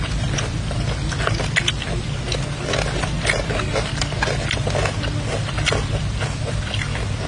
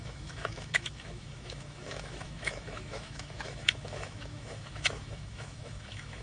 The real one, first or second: first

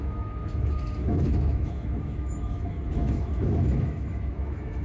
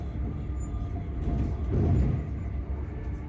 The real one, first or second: second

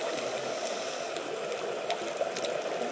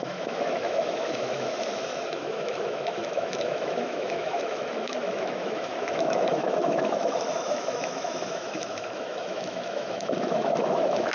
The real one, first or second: first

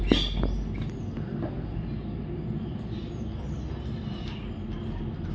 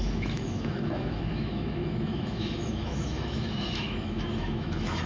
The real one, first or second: first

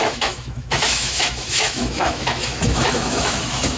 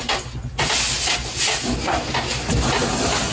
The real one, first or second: second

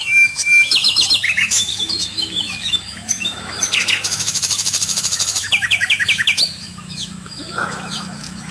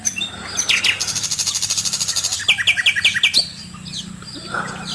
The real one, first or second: second